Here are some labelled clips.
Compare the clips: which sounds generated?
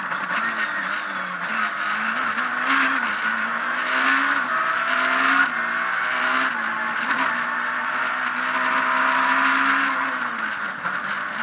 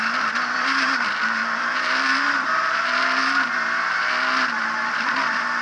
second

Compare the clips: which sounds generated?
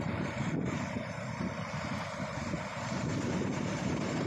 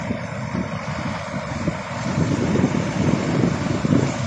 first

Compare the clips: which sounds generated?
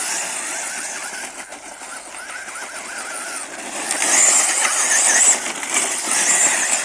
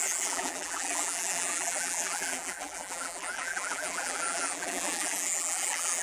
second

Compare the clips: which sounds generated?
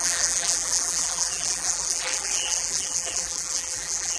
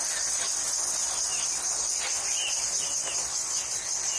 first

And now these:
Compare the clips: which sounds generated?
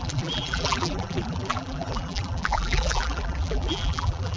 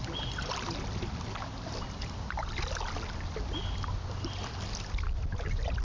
first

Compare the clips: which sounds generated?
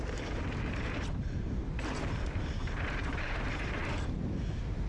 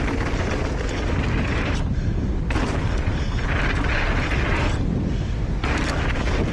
first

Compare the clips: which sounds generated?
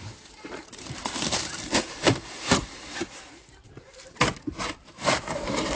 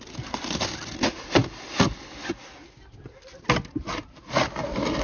first